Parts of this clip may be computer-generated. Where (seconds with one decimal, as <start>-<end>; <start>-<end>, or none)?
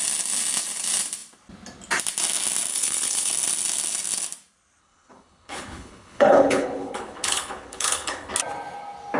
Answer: 2.7-3.3; 4.8-8.3